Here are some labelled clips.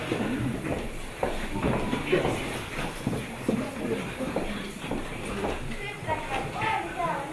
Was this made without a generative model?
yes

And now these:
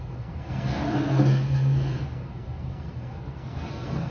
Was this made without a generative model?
no